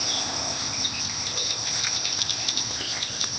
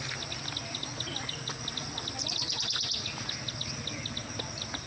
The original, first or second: second